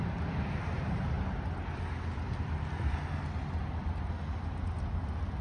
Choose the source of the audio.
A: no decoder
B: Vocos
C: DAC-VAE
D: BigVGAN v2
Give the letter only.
A